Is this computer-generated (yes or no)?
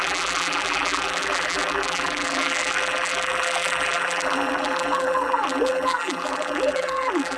yes